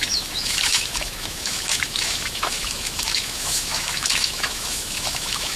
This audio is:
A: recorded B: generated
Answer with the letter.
B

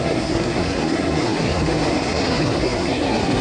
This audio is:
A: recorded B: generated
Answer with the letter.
B